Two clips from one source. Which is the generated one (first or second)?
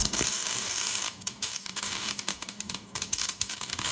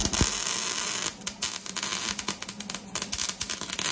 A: first